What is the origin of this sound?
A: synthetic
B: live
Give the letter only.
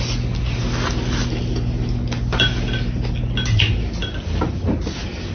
B